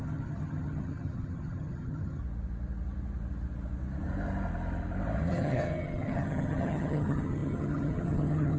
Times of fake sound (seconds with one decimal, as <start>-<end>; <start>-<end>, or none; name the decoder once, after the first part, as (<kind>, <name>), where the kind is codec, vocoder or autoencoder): 0.0-2.2 (vocoder, HiFi-GAN); 5.3-8.6